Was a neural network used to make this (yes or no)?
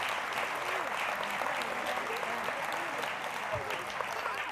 no